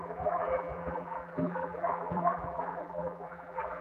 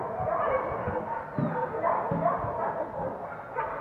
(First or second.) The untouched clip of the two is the second